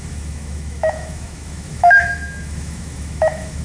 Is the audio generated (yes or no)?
yes